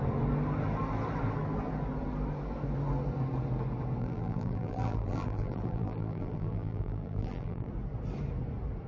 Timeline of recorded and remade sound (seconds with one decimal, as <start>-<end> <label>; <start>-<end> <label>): 0.0-4.0 recorded; 4.0-7.7 remade; 7.7-8.9 recorded